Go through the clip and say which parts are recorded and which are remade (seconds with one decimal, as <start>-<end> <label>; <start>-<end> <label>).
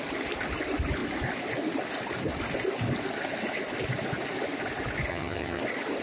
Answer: 0.0-5.1 recorded; 5.1-5.6 remade; 5.6-6.0 recorded